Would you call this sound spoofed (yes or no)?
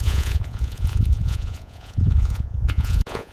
yes